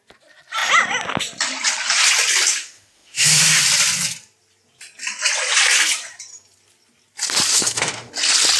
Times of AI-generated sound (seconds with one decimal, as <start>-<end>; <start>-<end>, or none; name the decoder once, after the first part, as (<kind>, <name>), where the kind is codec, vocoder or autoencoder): 2.5-3.6 (autoencoder, DAC-VAE); 7.5-8.1